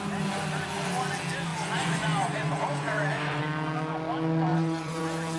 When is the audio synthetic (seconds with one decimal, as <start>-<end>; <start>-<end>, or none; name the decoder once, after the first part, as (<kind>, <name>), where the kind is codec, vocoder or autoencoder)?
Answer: 1.5-3.4 (vocoder, Vocos); 4.5-5.4